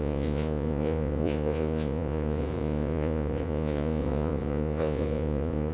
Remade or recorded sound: remade